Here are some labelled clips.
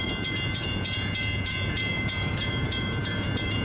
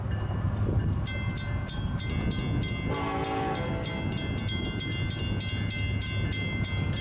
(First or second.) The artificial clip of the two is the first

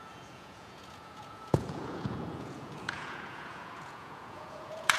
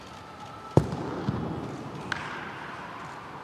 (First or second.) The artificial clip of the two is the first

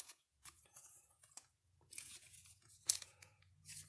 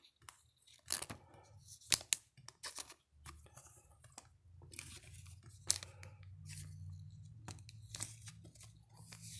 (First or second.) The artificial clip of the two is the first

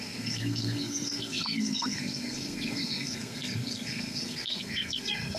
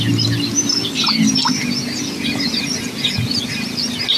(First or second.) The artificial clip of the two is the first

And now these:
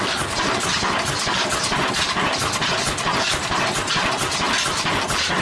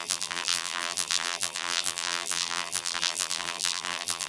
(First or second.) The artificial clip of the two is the second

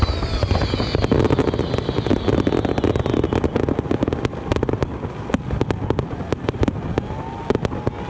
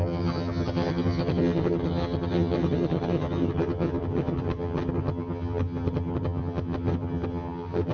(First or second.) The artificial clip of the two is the second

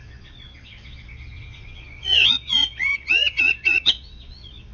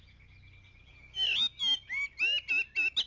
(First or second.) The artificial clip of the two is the first